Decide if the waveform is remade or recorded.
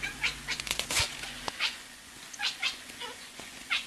remade